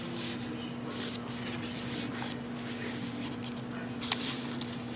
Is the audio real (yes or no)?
yes